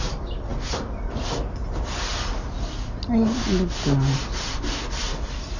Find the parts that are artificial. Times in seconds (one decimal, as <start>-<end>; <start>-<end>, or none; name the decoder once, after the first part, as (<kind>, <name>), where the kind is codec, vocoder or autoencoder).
none